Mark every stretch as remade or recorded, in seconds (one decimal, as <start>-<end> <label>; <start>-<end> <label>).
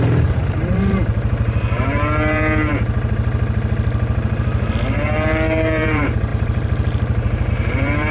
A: 0.0-2.7 remade; 2.7-4.7 recorded; 4.7-8.1 remade